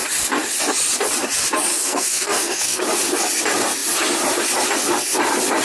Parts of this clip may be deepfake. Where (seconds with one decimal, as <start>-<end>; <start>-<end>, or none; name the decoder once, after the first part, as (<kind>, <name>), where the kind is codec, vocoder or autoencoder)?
1.7-2.8 (codec, SNAC)